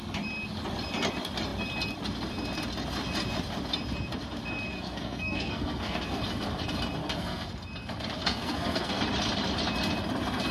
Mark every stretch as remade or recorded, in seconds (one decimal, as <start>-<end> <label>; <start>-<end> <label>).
0.0-4.7 recorded; 4.7-6.2 remade; 6.2-7.0 recorded; 7.0-7.5 remade; 7.5-8.2 recorded; 8.2-9.0 remade; 9.0-10.5 recorded